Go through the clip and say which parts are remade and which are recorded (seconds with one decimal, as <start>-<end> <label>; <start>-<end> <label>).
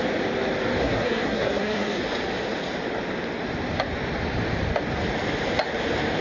0.0-0.8 recorded; 0.8-2.0 remade; 2.0-6.2 recorded